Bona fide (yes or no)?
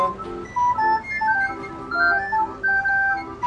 yes